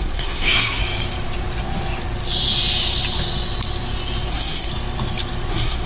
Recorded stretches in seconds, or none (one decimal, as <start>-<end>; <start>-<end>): 0.8-4.3; 4.7-5.5